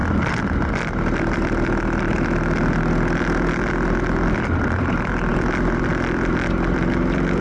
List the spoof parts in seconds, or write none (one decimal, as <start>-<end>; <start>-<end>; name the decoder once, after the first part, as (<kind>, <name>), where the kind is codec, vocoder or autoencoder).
4.3-7.4 (vocoder, BigVGAN v2)